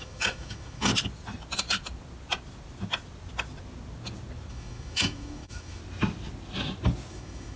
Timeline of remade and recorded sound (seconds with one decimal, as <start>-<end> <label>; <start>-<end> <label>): 0.0-0.9 remade; 0.9-4.5 recorded; 4.5-5.8 remade; 5.8-7.1 recorded; 7.1-7.6 remade